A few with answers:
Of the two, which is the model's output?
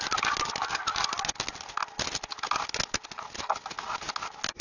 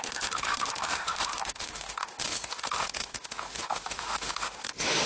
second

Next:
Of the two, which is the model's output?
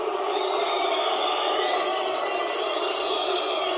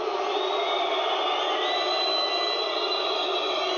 first